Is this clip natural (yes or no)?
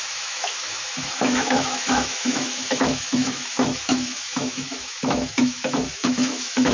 no